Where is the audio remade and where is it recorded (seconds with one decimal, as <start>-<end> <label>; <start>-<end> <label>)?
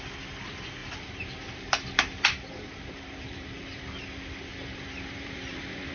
0.0-0.8 recorded; 0.8-3.8 remade; 3.8-4.5 recorded; 4.5-5.9 remade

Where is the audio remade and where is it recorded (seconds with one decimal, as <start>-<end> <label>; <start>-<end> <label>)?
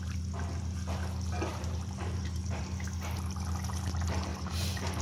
0.0-1.5 recorded; 1.5-2.6 remade; 2.6-4.3 recorded; 4.3-5.0 remade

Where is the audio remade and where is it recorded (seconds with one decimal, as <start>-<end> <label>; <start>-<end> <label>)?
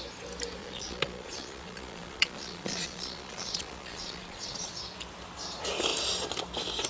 0.0-0.6 recorded; 0.6-4.7 remade; 4.7-6.9 recorded